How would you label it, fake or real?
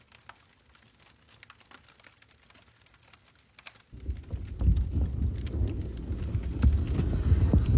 real